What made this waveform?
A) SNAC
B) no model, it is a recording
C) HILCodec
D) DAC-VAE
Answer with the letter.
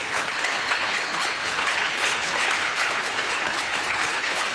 C